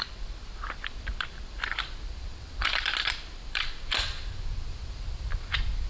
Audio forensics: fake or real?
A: fake